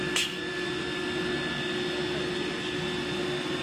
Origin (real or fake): real